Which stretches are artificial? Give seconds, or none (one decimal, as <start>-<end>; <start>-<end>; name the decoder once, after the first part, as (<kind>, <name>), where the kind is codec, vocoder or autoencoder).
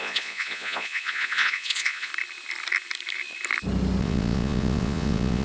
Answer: 0.0-2.1 (vocoder, Vocos); 4.0-5.4